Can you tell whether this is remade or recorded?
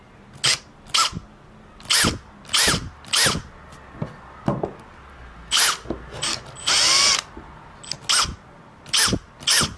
recorded